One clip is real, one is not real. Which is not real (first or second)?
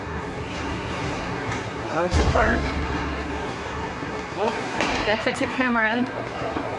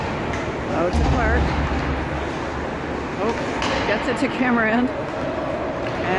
first